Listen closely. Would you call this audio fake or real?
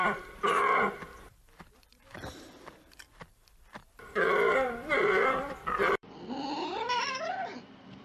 fake